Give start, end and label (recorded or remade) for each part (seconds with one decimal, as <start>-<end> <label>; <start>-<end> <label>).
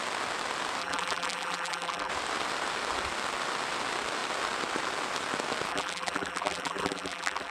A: 0.0-0.8 recorded; 0.8-2.1 remade; 2.1-5.7 recorded; 5.7-7.5 remade